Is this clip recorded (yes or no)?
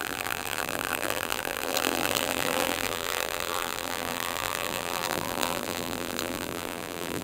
no